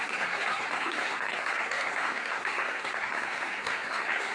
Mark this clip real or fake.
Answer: fake